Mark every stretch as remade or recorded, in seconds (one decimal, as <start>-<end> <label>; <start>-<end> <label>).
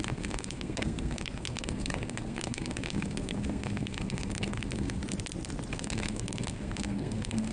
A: 0.0-5.0 remade; 5.0-5.7 recorded; 5.7-7.5 remade